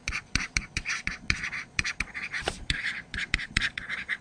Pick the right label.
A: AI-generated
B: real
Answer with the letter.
A